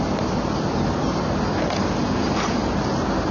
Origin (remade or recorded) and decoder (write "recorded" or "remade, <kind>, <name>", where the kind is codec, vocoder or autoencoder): recorded